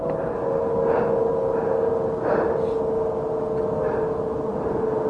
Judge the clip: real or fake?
real